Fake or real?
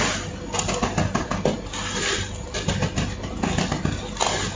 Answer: real